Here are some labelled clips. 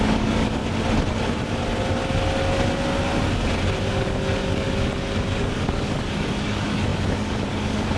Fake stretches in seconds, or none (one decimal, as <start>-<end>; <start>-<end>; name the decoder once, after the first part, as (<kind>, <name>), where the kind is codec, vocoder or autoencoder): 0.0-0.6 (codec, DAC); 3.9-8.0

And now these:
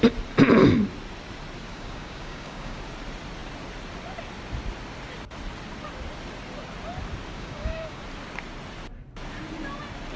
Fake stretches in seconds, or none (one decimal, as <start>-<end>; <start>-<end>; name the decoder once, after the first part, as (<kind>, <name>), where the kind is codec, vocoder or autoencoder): 1.7-2.8 (codec, DAC); 7.3-8.0

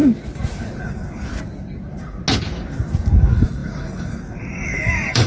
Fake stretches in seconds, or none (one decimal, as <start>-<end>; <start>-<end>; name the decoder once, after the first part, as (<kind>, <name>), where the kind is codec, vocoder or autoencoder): 0.8-1.3 (codec, DAC); 3.1-5.3

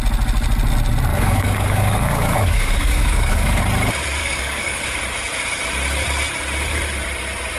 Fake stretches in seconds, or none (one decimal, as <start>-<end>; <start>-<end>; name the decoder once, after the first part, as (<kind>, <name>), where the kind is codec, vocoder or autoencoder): 1.1-3.6 (codec, DAC); 4.2-4.8

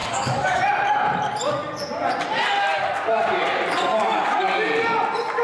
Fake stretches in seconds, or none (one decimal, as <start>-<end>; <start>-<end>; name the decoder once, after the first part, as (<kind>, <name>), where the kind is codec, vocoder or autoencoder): 0.0-0.6 (codec, DAC); 3.9-4.4

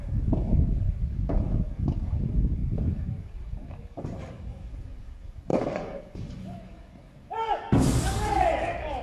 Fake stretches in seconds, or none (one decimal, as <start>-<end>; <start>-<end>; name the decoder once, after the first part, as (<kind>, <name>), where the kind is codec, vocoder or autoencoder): 0.0-9.0 (codec, DAC)

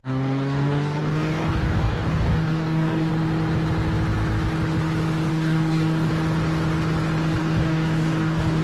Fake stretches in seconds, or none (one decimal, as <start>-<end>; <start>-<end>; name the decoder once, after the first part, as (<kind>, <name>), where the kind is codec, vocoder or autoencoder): 0.0-3.1 (codec, DAC); 5.3-6.1; 7.4-8.6

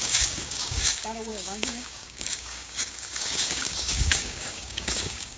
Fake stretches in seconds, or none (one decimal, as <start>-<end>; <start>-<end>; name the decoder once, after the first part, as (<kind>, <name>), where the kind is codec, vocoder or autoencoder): 0.0-5.4 (codec, DAC)